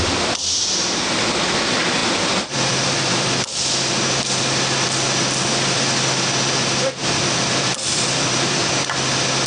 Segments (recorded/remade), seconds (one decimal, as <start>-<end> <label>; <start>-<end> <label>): 0.0-2.0 recorded; 2.0-3.3 remade; 3.3-7.0 recorded; 7.0-8.7 remade; 8.7-9.5 recorded